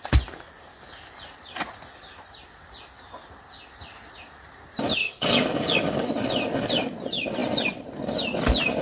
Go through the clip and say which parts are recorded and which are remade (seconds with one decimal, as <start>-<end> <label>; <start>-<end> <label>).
0.0-5.0 recorded; 5.0-6.1 remade; 6.1-8.8 recorded